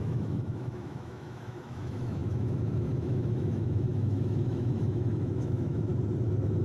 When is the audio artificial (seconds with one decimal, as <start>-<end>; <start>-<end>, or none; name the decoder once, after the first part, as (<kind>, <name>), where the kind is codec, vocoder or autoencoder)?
0.0-5.9 (autoencoder, DAC-VAE)

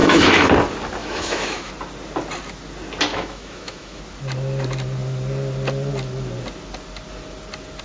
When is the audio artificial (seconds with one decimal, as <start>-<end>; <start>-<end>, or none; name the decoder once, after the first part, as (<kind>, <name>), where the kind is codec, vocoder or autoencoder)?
0.0-0.5 (autoencoder, DAC-VAE); 1.0-1.7; 3.1-4.0

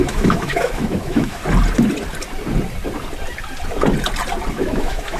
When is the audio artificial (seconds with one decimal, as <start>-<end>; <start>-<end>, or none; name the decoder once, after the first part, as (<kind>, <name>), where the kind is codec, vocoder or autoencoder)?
0.0-1.4 (autoencoder, DAC-VAE); 4.5-5.2

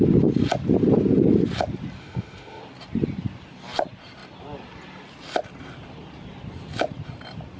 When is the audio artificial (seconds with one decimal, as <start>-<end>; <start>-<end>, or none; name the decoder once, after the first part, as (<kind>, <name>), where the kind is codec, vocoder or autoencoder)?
2.0-2.6 (autoencoder, DAC-VAE)

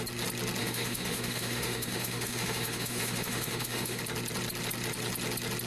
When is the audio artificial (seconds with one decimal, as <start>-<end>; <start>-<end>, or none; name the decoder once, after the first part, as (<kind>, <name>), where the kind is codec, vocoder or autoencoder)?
0.6-4.0 (autoencoder, DAC-VAE)

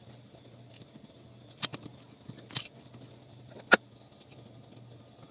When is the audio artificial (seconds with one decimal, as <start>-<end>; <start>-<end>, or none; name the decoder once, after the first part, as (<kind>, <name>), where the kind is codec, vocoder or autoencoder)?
none

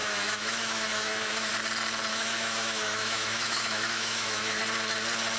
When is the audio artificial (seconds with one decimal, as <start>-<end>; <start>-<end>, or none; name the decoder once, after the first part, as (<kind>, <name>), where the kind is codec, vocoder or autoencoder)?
0.0-1.5 (autoencoder, DAC-VAE); 2.1-4.6

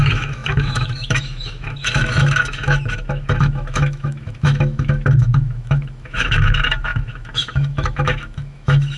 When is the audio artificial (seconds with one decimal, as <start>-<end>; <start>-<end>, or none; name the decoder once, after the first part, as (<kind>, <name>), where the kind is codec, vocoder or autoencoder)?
0.0-9.0 (autoencoder, DAC-VAE)